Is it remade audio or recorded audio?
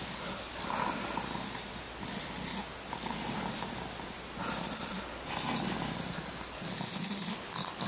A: recorded